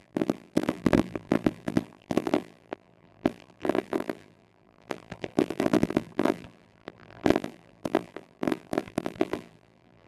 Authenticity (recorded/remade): remade